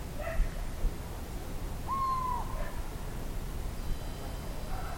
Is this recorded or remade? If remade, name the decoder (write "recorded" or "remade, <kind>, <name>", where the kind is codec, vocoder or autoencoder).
recorded